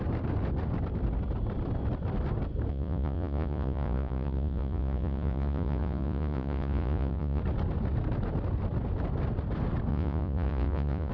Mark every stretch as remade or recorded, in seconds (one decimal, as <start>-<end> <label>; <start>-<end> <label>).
0.0-2.7 recorded; 2.7-7.4 remade; 7.4-9.9 recorded; 9.9-11.1 remade